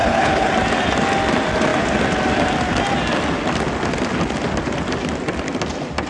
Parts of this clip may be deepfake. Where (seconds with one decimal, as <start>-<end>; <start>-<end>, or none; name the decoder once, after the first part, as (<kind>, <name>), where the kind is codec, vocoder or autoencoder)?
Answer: 0.0-0.5 (codec, HILCodec)